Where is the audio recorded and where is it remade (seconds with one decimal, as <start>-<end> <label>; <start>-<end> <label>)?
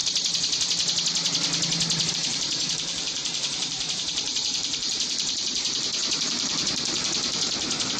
0.0-2.1 recorded; 2.1-8.0 remade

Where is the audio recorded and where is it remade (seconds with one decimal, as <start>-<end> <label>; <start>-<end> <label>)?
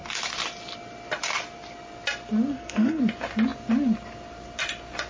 0.0-2.5 recorded; 2.5-3.0 remade; 3.0-5.1 recorded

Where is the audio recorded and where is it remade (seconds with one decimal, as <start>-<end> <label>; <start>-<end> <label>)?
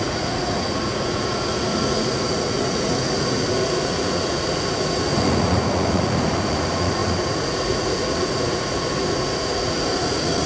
0.0-10.5 remade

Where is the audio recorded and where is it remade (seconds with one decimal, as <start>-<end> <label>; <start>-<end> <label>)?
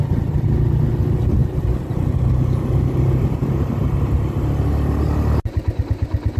0.0-6.4 recorded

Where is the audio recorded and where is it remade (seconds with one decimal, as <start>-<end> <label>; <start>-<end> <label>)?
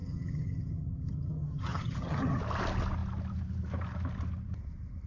0.0-2.4 remade; 2.4-5.1 recorded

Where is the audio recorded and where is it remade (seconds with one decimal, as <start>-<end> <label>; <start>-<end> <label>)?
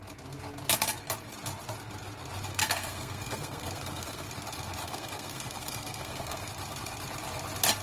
0.0-2.5 recorded; 2.5-4.3 remade; 4.3-4.8 recorded; 4.8-6.5 remade; 6.5-7.8 recorded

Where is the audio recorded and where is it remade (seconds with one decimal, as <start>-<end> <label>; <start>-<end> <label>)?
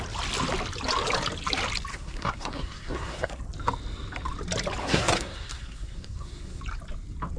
0.0-1.9 recorded; 1.9-3.4 remade; 3.4-4.8 recorded; 4.8-6.6 remade; 6.6-7.4 recorded